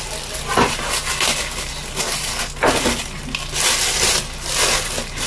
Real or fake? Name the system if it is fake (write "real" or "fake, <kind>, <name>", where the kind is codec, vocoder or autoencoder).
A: real